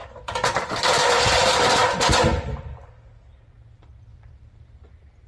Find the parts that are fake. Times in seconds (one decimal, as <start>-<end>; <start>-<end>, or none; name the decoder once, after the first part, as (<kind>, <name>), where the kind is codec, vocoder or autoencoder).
0.7-1.8 (vocoder, BigVGAN v2); 3.5-5.3